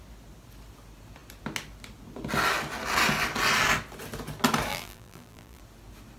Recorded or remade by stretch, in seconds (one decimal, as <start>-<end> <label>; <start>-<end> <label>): 0.0-4.7 recorded; 4.7-5.6 remade; 5.6-6.2 recorded